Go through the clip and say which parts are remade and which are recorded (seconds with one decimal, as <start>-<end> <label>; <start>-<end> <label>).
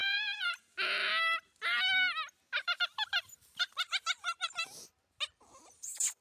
0.0-0.6 remade; 0.6-6.2 recorded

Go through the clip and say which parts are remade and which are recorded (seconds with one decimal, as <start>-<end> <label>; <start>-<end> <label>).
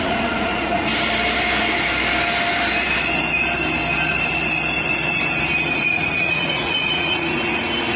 0.0-0.9 remade; 0.9-5.7 recorded; 5.7-8.0 remade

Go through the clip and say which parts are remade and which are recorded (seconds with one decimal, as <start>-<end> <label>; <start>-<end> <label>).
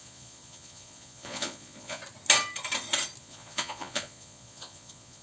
0.0-2.0 remade; 2.0-3.2 recorded; 3.2-5.2 remade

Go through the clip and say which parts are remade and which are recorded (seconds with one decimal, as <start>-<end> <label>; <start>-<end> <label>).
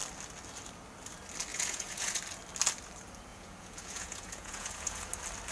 0.0-1.5 recorded; 1.5-2.2 remade; 2.2-3.3 recorded; 3.3-5.1 remade; 5.1-5.5 recorded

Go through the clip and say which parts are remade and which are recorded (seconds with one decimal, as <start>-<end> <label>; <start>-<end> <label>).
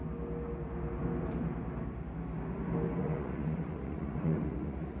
0.0-3.0 recorded; 3.0-5.0 remade